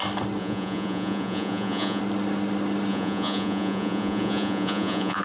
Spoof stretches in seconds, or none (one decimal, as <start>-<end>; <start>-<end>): 0.4-2.0; 2.9-5.2